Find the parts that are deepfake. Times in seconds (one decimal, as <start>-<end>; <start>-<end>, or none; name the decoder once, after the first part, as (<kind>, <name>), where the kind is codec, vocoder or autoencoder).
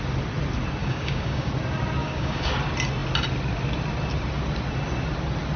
0.8-1.5 (codec, DAC); 2.0-2.5